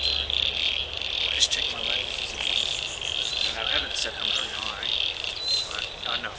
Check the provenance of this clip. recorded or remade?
recorded